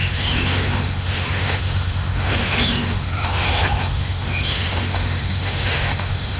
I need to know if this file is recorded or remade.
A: remade